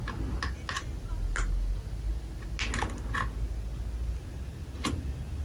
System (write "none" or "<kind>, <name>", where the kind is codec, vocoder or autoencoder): none